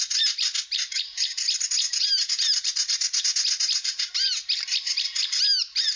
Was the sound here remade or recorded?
recorded